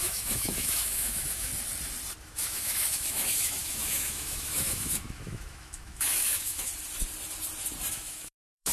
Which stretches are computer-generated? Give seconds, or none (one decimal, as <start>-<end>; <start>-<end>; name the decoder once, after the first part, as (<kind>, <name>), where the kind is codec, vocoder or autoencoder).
0.0-1.5 (autoencoder, DAC-VAE); 2.2-6.7; 7.9-8.7